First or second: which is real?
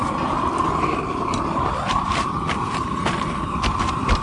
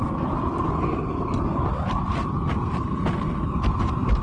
second